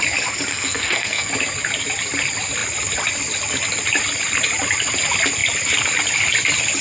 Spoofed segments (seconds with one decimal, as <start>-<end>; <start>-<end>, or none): 0.5-1.3